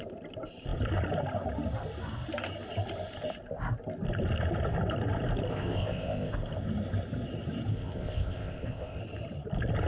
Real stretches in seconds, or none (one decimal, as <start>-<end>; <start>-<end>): 0.0-5.5; 6.3-7.7; 9.0-9.9